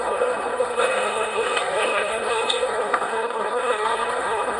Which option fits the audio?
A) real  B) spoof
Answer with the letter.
B